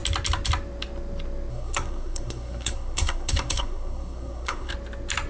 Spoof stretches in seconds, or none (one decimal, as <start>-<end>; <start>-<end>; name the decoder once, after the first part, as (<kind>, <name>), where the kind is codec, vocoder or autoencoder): 1.5-4.7 (codec, SNAC)